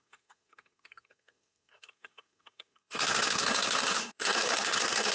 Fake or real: fake